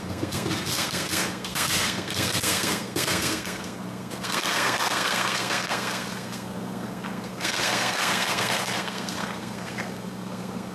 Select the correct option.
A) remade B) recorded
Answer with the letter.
A